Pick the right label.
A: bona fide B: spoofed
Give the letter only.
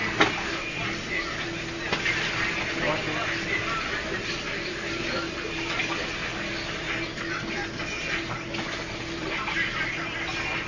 A